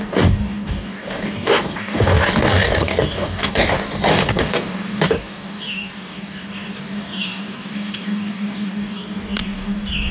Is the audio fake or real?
fake